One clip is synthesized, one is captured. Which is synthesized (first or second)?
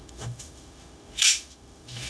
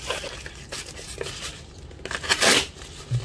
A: first